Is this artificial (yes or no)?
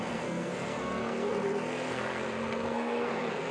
yes